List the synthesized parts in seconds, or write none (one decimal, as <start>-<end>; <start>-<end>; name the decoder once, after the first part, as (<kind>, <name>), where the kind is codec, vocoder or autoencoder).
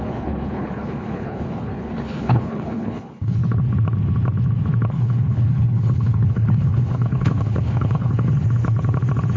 0.0-3.4 (codec, HILCodec); 4.9-8.3